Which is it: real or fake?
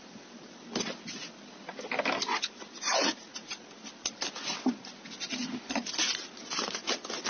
real